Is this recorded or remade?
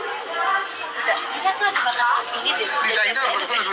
recorded